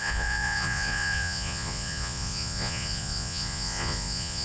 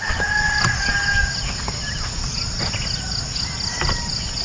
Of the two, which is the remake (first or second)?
first